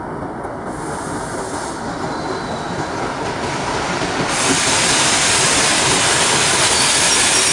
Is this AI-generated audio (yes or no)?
no